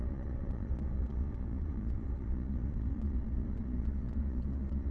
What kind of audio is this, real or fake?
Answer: fake